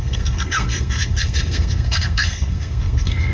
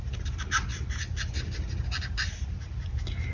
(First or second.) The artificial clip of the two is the first